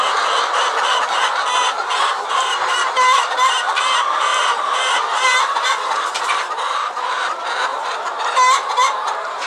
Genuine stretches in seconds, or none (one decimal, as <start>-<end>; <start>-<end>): 0.0-1.6; 3.8-7.7